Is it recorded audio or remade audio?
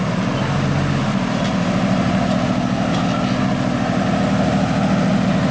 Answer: recorded